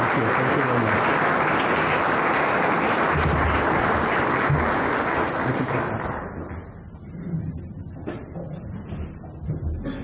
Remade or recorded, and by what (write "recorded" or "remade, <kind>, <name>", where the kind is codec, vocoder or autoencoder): recorded